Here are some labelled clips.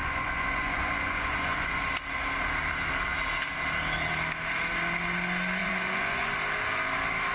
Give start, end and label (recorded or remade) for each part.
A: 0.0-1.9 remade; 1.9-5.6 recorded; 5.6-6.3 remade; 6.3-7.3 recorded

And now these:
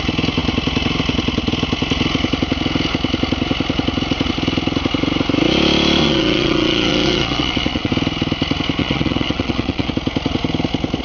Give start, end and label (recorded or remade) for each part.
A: 0.0-6.0 recorded; 6.0-7.9 remade; 7.9-8.8 recorded; 8.8-9.9 remade; 9.9-11.0 recorded

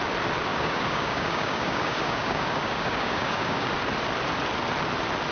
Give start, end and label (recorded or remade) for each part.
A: 0.0-0.5 recorded; 0.5-3.7 remade; 3.7-5.3 recorded

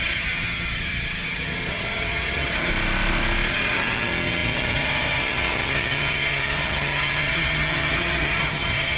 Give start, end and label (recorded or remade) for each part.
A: 0.0-2.7 remade; 2.7-3.5 recorded; 3.5-9.0 remade

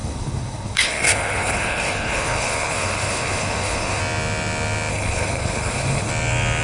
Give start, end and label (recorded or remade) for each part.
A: 0.0-4.0 remade; 4.0-4.9 recorded; 4.9-6.1 remade; 6.1-6.6 recorded

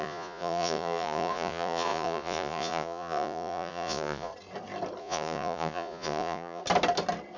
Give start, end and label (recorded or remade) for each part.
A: 0.0-4.3 remade; 4.3-5.0 recorded; 5.0-6.6 remade; 6.6-7.4 recorded

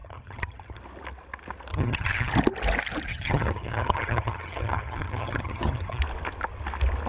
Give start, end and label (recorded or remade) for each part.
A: 0.0-0.8 remade; 0.8-1.7 recorded; 1.7-2.3 remade; 2.3-3.1 recorded; 3.1-6.0 remade; 6.0-7.1 recorded

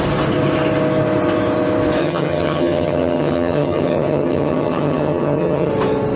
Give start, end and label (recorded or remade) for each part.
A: 0.0-2.0 recorded; 2.0-5.7 remade; 5.7-6.2 recorded